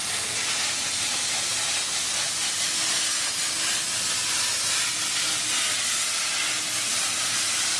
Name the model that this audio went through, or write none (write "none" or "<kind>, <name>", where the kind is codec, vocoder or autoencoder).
none